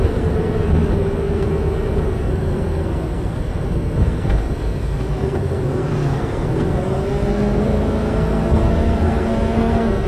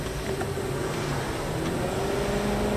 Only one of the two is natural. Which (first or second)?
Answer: second